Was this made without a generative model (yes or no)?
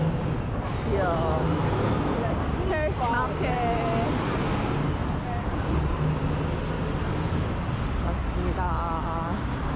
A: yes